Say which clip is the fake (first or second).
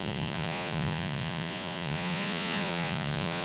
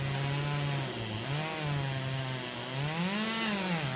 first